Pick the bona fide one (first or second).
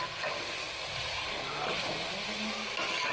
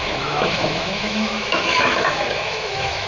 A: first